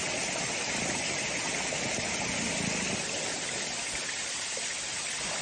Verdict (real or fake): real